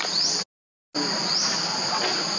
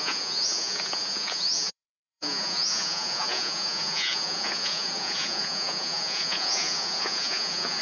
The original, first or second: first